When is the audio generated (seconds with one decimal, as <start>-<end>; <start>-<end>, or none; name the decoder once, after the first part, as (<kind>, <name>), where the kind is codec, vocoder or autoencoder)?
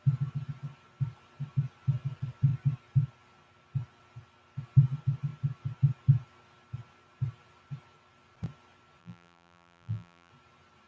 9.0-10.3 (vocoder, BigVGAN v2)